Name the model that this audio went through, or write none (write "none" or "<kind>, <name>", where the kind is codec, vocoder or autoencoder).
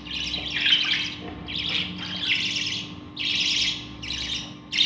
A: none